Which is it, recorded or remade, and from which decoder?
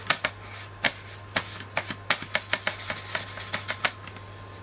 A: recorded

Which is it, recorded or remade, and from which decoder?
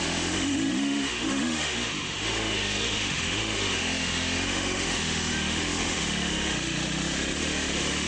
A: remade, autoencoder, DAC-VAE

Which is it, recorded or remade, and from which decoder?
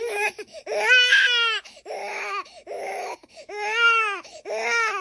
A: remade, autoencoder, DAC-VAE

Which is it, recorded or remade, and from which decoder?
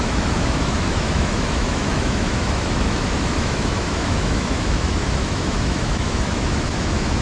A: remade, autoencoder, DAC-VAE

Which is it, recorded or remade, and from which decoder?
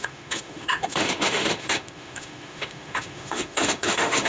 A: remade, autoencoder, DAC-VAE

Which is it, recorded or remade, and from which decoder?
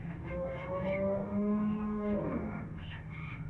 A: remade, autoencoder, DAC-VAE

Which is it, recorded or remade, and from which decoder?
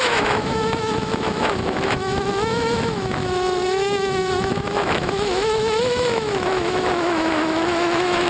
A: remade, autoencoder, DAC-VAE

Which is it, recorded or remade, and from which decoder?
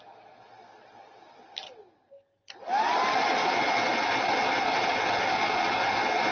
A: recorded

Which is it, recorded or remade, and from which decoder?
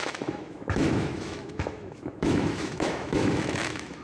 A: remade, autoencoder, DAC-VAE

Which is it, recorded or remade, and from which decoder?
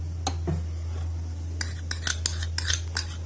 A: recorded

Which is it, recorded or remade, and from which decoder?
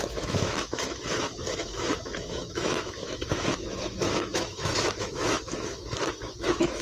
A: remade, autoencoder, DAC-VAE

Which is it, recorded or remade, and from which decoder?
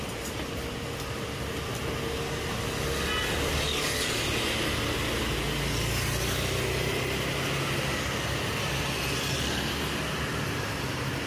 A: recorded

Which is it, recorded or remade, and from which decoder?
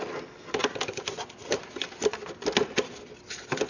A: recorded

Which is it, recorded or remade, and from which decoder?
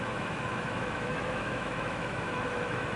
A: remade, autoencoder, DAC-VAE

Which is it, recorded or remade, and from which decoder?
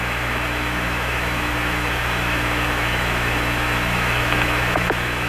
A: remade, autoencoder, DAC-VAE